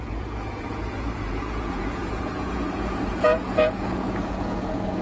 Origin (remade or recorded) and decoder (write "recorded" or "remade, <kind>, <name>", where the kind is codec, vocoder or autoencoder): remade, vocoder, Vocos